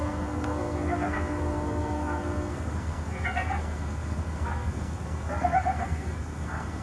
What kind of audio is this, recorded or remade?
remade